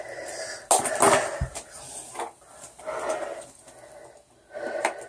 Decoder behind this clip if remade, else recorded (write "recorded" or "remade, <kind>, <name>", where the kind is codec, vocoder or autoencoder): recorded